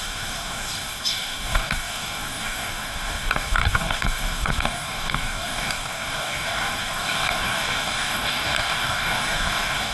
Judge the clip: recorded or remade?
remade